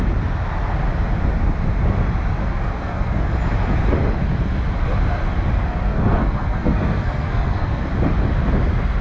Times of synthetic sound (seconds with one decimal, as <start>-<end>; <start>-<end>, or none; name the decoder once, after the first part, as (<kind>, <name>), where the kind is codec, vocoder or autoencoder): 2.4-3.3 (codec, SNAC); 5.6-7.9